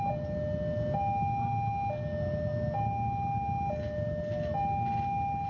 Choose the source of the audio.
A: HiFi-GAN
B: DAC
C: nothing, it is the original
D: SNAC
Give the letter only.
C